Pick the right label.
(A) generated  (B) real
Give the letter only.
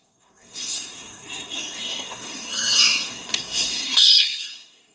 A